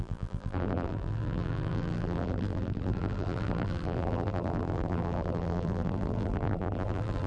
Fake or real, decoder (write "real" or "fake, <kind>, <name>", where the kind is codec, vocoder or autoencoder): fake, vocoder, BigVGAN v2